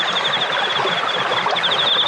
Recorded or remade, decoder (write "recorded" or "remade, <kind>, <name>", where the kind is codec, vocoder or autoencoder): recorded